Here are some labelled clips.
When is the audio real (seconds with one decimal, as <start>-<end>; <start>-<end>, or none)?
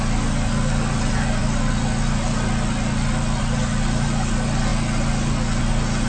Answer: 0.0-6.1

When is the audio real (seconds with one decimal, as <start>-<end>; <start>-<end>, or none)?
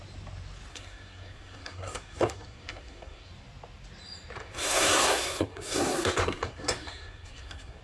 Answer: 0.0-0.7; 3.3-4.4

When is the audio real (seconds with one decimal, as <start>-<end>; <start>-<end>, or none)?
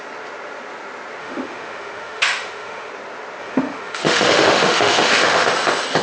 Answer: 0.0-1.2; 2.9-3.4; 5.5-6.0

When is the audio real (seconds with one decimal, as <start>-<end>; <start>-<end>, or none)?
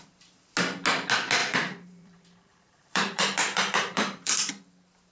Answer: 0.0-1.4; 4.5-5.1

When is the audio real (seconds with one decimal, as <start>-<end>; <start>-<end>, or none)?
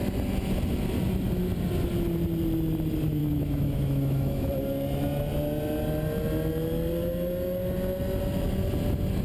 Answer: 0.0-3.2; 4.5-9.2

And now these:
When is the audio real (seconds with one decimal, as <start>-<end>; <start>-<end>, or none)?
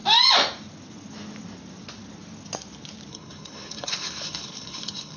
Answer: 0.0-3.1